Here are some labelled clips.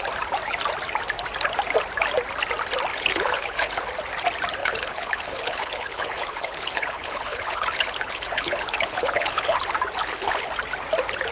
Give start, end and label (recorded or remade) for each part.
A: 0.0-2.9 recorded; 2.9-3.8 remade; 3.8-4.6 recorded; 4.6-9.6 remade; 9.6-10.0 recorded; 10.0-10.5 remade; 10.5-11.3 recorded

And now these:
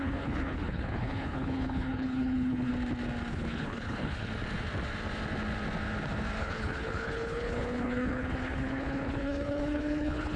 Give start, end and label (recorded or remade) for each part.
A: 0.0-2.7 remade; 2.7-3.3 recorded; 3.3-4.3 remade; 4.3-6.4 recorded; 6.4-10.4 remade

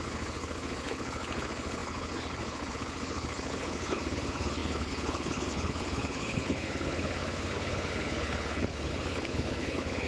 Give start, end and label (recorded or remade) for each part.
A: 0.0-10.1 remade